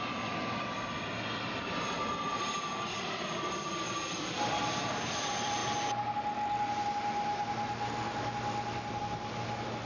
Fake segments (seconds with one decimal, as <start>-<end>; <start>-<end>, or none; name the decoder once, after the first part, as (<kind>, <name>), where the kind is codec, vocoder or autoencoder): 0.0-5.6 (vocoder, BigVGAN v2)